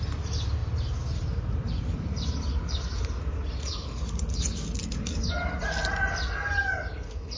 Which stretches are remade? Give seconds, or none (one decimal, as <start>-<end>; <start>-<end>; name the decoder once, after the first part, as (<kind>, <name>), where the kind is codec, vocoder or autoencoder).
none